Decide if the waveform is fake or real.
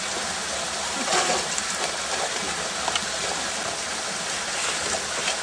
real